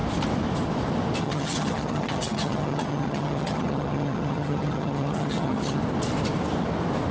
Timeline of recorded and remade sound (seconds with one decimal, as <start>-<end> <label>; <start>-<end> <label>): 0.0-1.2 recorded; 1.2-5.8 remade; 5.8-7.1 recorded